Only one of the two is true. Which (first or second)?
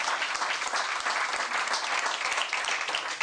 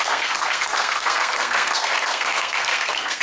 first